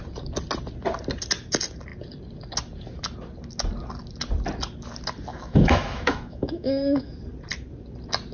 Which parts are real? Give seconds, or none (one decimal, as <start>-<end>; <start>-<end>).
0.0-5.3; 7.1-8.3